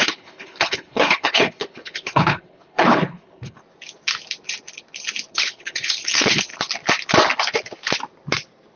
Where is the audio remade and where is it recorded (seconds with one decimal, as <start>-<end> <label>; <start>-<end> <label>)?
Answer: 0.0-3.6 remade; 3.6-5.3 recorded; 5.3-6.5 remade; 6.5-8.8 recorded